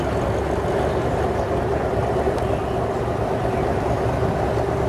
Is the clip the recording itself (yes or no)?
yes